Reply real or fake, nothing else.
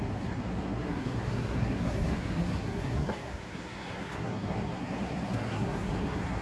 fake